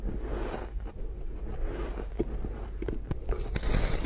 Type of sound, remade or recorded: recorded